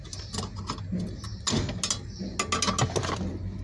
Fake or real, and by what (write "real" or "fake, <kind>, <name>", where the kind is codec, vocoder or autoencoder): real